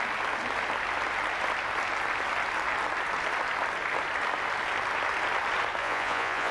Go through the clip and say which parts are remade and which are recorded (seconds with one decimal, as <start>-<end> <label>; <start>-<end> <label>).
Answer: 0.0-5.8 recorded; 5.8-6.5 remade